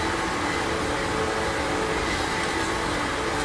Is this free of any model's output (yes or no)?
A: yes